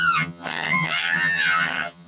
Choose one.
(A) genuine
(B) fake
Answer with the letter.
B